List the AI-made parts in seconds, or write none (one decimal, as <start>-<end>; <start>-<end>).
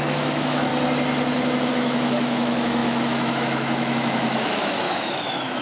0.0-0.7; 1.7-5.6